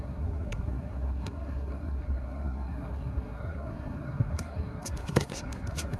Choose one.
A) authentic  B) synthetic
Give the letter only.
B